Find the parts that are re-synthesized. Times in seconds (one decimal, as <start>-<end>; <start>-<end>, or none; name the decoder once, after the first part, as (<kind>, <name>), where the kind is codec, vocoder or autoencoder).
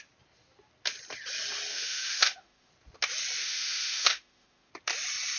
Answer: 1.7-2.7 (autoencoder, DAC-VAE); 3.4-4.7